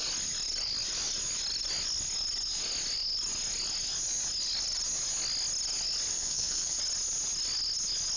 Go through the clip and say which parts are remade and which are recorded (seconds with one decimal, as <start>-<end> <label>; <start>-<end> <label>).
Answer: 0.0-6.1 recorded; 6.1-6.8 remade; 6.8-8.2 recorded

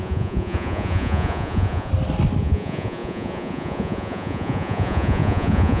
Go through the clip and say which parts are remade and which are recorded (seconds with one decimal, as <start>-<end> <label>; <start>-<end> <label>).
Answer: 0.0-1.9 remade; 1.9-2.4 recorded; 2.4-5.8 remade

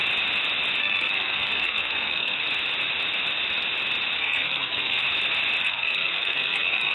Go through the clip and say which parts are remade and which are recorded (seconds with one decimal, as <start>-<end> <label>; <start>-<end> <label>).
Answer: 0.0-0.8 recorded; 0.8-2.4 remade; 2.4-4.2 recorded; 4.2-5.0 remade; 5.0-5.6 recorded; 5.6-6.9 remade

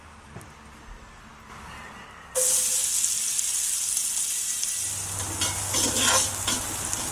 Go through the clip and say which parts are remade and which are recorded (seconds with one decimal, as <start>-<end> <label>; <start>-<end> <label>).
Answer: 0.0-7.1 recorded

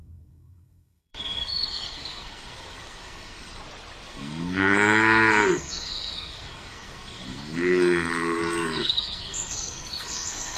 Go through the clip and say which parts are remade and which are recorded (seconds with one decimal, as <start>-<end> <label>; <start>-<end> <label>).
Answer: 0.0-3.6 remade; 3.6-4.1 recorded; 4.1-10.6 remade

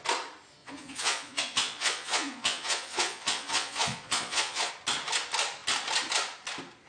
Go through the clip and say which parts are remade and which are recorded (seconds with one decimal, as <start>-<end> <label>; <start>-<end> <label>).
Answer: 0.0-0.6 recorded; 0.6-4.7 remade; 4.7-6.9 recorded

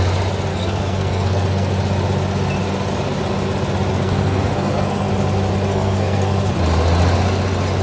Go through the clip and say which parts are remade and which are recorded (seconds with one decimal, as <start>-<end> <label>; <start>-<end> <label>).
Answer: 0.0-0.5 recorded; 0.5-1.7 remade; 1.7-3.9 recorded; 3.9-5.1 remade; 5.1-5.7 recorded; 5.7-6.5 remade; 6.5-7.8 recorded

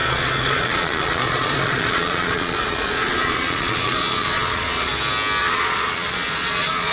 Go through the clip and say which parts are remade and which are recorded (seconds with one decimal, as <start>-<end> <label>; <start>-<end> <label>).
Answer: 0.0-4.9 remade; 4.9-5.4 recorded; 5.4-6.9 remade